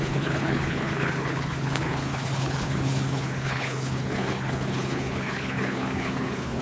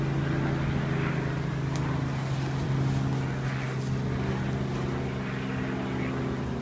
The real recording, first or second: second